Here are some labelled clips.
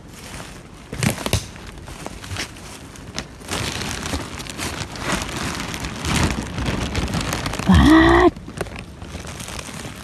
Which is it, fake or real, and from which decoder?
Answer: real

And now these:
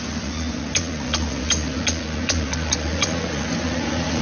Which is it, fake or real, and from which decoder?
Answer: fake, vocoder, Vocos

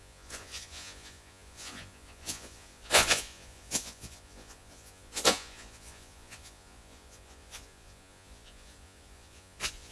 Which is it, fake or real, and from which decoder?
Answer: fake, vocoder, Vocos